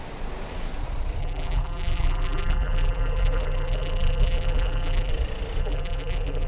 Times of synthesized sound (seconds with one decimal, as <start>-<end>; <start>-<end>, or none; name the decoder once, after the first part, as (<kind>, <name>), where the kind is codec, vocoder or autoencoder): 1.2-5.1 (vocoder, BigVGAN v2); 5.6-6.5